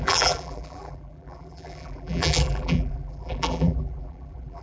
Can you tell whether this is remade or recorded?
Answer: remade